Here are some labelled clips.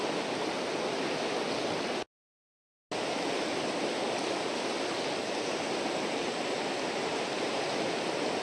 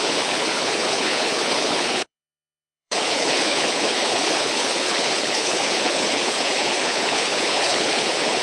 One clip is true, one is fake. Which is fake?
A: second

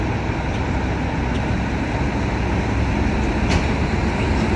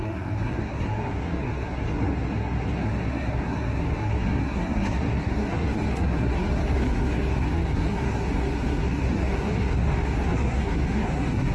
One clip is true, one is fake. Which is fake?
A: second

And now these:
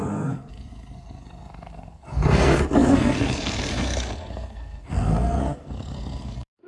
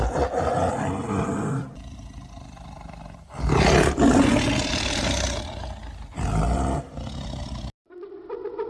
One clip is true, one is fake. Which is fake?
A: first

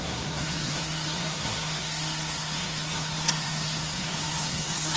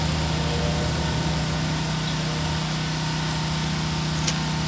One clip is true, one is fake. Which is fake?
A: first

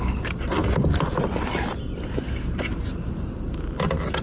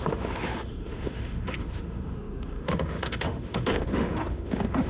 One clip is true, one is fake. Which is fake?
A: second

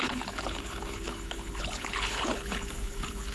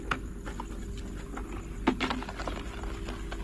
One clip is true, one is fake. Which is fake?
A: first